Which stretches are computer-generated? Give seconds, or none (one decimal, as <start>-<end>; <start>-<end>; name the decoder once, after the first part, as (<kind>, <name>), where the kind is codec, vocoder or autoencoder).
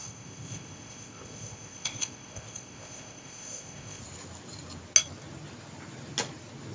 0.0-4.0 (codec, ZipCodec)